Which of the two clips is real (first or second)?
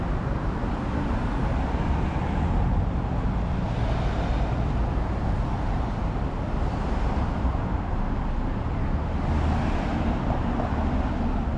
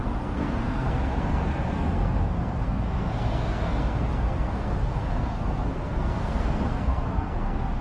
first